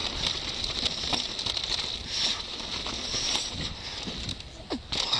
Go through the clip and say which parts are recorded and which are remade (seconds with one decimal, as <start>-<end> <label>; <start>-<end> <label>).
0.0-5.2 recorded